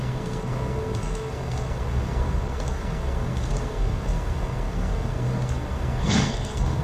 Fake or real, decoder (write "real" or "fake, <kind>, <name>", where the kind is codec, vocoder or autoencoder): fake, codec, SNAC